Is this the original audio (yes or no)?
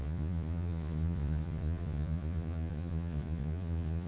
no